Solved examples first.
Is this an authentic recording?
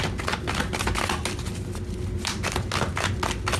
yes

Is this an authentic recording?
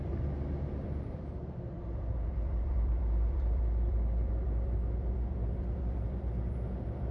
no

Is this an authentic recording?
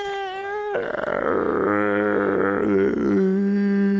yes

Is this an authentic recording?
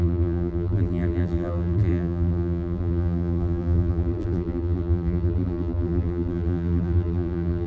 no